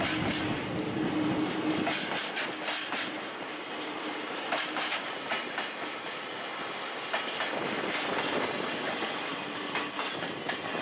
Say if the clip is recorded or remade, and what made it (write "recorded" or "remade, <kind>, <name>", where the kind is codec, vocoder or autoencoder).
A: recorded